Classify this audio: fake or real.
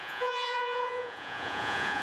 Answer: fake